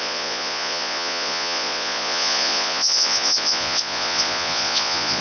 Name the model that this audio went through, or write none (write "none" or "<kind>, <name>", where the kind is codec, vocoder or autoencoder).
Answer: vocoder, Vocos